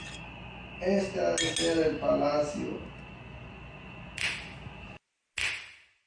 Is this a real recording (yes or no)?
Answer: yes